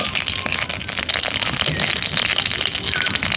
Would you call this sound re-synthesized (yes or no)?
no